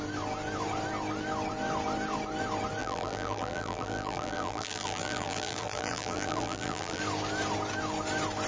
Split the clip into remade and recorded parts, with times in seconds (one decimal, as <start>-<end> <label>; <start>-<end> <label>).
0.0-2.8 recorded; 2.8-7.0 remade; 7.0-8.5 recorded